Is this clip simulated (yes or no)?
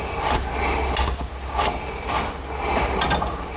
no